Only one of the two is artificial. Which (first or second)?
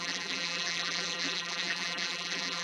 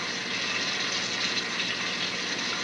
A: first